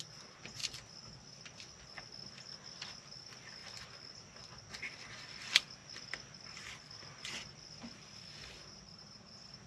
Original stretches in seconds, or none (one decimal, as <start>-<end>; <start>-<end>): 0.0-9.7